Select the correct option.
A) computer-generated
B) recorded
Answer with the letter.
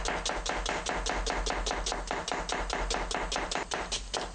B